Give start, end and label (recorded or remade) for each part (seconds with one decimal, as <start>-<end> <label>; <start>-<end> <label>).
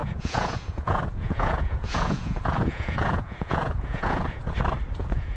0.0-4.4 remade; 4.4-5.0 recorded; 5.0-5.4 remade